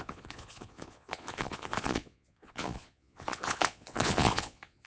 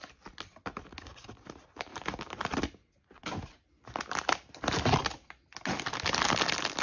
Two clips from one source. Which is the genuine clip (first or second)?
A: second